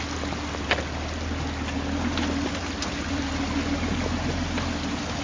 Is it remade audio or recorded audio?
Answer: recorded